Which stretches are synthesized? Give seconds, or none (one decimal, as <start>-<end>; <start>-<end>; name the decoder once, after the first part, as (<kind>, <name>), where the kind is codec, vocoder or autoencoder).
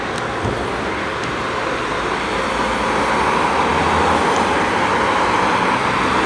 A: none